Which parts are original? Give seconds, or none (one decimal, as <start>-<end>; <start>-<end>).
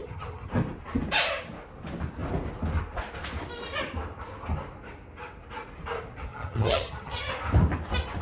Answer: 0.5-6.3; 7.3-8.2